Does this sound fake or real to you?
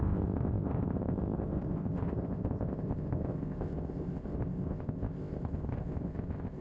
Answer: fake